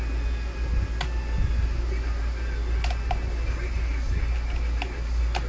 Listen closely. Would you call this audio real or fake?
real